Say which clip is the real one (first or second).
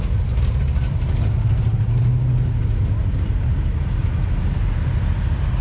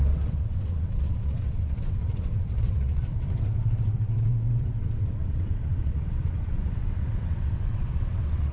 first